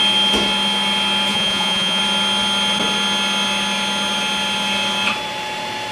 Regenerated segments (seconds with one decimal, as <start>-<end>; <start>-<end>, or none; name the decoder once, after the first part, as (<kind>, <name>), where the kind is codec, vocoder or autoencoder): 1.3-2.0 (vocoder, Vocos)